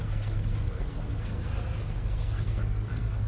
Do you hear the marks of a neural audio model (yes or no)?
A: yes